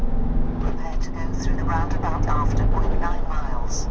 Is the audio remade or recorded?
recorded